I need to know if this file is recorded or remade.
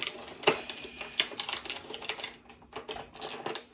recorded